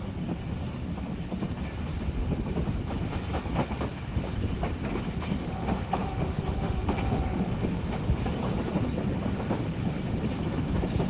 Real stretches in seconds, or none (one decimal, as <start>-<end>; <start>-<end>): 0.0-5.4; 8.2-11.1